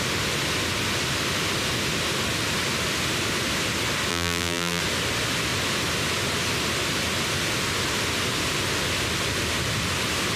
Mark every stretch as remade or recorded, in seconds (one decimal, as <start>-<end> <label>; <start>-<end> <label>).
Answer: 0.0-4.1 recorded; 4.1-4.8 remade; 4.8-10.4 recorded